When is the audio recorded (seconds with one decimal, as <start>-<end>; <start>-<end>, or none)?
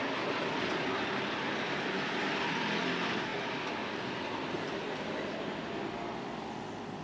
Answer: 0.0-7.0